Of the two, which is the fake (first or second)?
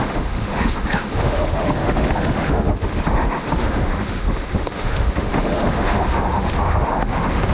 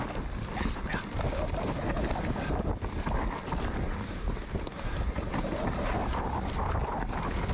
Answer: first